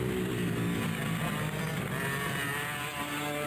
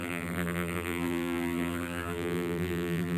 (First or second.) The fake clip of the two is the second